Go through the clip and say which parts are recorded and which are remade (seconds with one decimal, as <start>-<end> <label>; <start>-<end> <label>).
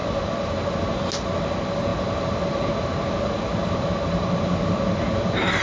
0.0-5.6 recorded